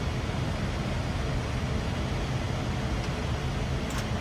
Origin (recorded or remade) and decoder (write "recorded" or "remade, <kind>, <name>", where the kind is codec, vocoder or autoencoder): recorded